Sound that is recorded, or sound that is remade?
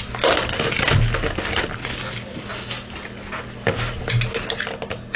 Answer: recorded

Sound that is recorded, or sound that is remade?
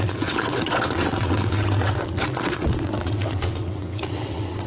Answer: remade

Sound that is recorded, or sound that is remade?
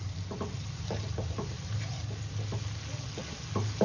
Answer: recorded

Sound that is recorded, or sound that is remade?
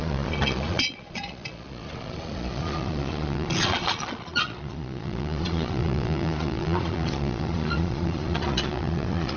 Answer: remade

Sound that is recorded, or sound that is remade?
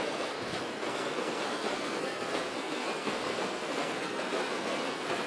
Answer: remade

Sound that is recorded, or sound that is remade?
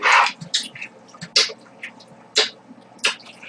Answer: recorded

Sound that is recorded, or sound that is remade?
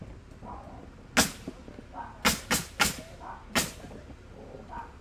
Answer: recorded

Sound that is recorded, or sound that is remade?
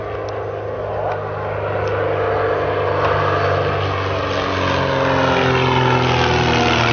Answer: recorded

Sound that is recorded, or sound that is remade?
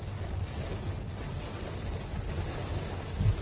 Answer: recorded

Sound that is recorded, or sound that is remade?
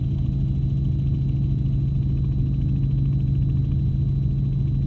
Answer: recorded